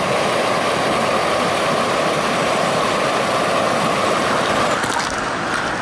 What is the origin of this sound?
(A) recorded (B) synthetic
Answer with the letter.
A